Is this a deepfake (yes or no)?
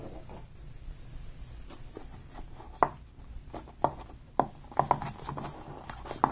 no